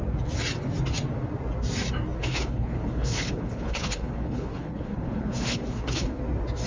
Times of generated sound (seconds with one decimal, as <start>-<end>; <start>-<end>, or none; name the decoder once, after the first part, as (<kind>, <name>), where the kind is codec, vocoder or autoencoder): 2.2-6.2 (codec, HILCodec)